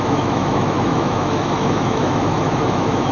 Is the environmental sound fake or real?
fake